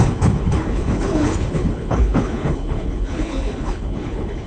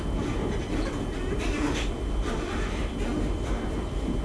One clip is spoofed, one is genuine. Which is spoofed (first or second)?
first